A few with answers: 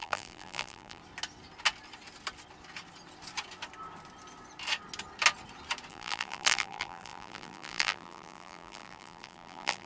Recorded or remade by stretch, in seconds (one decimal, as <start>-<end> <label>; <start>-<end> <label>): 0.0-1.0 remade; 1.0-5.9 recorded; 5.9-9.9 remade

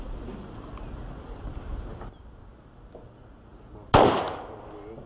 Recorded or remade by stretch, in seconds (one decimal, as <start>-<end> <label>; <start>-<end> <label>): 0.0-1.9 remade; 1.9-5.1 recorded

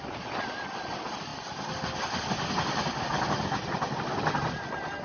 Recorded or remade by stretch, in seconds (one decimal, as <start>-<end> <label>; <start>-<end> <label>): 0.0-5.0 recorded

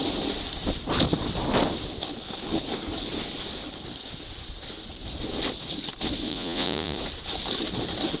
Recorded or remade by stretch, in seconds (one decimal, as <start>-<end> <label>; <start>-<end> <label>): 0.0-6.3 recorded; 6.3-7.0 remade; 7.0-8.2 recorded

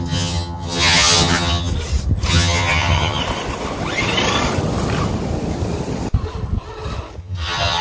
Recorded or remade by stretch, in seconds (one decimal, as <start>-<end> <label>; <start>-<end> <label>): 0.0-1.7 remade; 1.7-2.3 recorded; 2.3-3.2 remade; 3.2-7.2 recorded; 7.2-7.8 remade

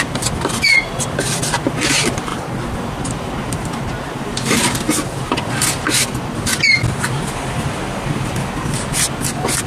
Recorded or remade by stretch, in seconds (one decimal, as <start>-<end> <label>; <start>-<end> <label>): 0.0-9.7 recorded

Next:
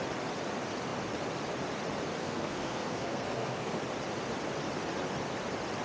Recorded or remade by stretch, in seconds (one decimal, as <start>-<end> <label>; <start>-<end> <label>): 0.0-2.2 recorded; 2.2-3.8 remade; 3.8-5.8 recorded

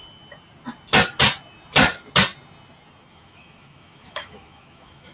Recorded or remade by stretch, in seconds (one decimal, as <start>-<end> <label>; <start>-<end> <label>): 0.0-3.1 recorded; 3.1-5.1 remade